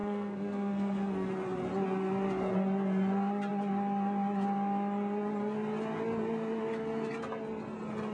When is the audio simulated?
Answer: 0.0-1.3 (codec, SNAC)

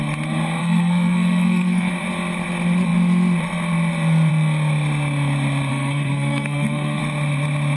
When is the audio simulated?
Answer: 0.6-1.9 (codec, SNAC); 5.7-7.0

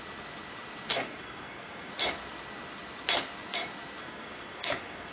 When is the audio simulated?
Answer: 0.9-1.9 (codec, SNAC); 4.0-5.1

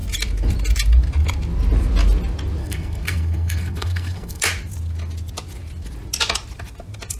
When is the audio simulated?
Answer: 2.6-4.4 (codec, SNAC)

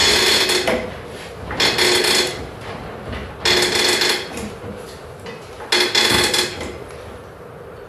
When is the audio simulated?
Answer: none

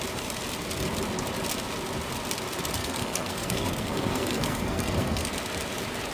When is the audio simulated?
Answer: 2.8-5.3 (codec, SNAC)

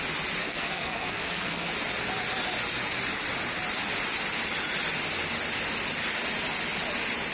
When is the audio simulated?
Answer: 0.4-1.7 (codec, SNAC)

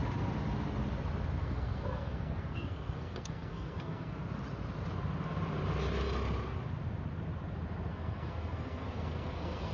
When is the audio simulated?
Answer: 1.4-4.2 (codec, SNAC); 7.9-9.7